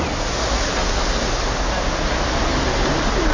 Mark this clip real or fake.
real